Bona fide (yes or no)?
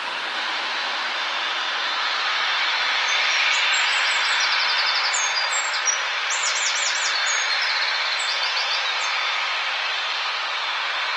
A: yes